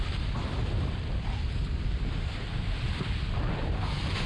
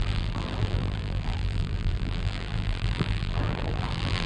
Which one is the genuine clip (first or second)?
first